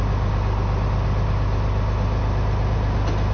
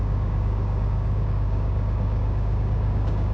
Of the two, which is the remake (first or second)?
second